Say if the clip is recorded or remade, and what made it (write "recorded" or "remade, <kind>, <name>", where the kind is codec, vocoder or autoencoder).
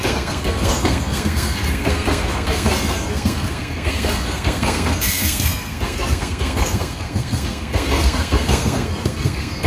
remade, codec, SNAC